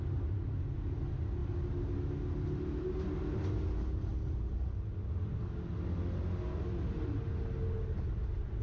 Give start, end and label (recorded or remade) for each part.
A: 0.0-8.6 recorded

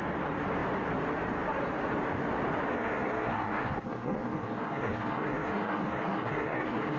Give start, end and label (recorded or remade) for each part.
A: 0.0-2.7 recorded; 2.7-7.0 remade

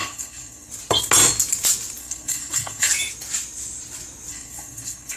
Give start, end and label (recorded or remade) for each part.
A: 0.0-0.7 remade; 0.7-2.0 recorded; 2.0-2.9 remade; 2.9-4.3 recorded; 4.3-5.2 remade

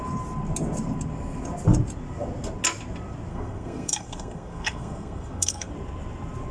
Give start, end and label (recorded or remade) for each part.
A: 0.0-3.3 recorded; 3.3-5.7 remade; 5.7-6.5 recorded

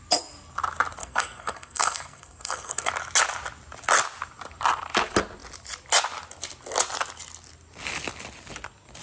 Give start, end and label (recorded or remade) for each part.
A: 0.0-1.0 recorded; 1.0-2.9 remade; 2.9-9.0 recorded

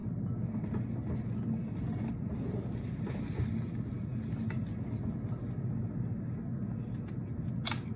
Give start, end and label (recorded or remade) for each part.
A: 0.0-8.0 recorded

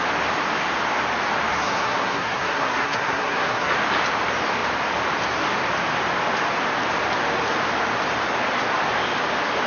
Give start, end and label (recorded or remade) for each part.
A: 0.0-1.5 recorded; 1.5-3.7 remade; 3.7-9.7 recorded

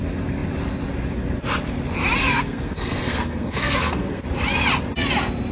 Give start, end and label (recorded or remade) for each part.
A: 0.0-2.2 recorded; 2.2-4.2 remade; 4.2-5.5 recorded